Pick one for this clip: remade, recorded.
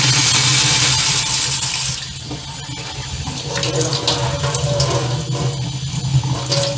recorded